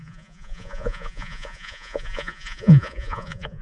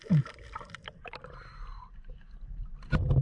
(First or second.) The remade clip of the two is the first